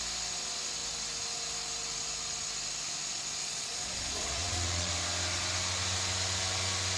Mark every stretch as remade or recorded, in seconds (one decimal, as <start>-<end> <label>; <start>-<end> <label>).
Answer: 0.0-3.4 recorded; 3.4-4.9 remade; 4.9-7.0 recorded